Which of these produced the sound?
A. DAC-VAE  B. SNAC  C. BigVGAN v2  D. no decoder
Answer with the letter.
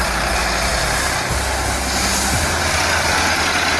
D